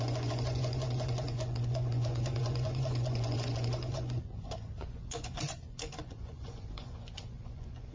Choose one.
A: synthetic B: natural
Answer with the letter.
A